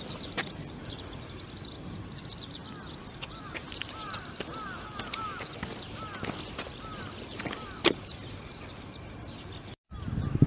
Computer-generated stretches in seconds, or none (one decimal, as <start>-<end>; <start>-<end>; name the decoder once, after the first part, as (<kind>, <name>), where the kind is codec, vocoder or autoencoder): 6.9-10.5 (vocoder, BigVGAN v2)